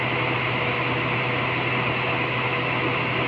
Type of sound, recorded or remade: recorded